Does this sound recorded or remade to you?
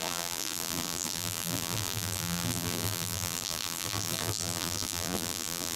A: remade